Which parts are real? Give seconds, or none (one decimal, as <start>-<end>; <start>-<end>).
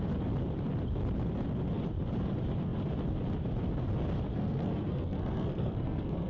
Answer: 0.0-4.3